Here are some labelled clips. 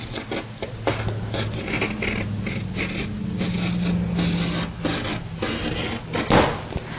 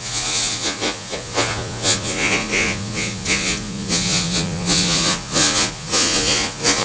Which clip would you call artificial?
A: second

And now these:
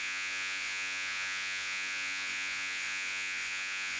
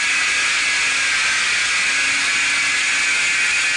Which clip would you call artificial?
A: first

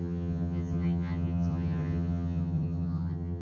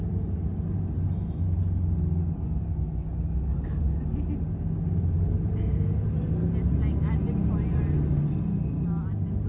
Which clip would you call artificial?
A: first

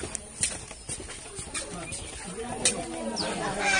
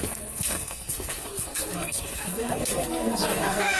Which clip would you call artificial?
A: second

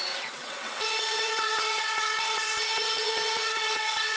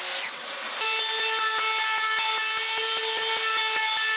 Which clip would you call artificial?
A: first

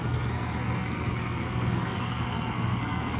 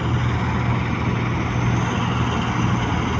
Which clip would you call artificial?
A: first